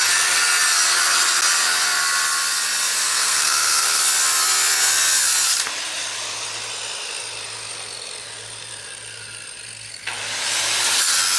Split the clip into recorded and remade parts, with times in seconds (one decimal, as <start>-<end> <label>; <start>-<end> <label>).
0.0-3.0 recorded; 3.0-4.0 remade; 4.0-11.4 recorded